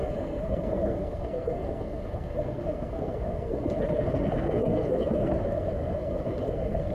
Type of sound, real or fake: fake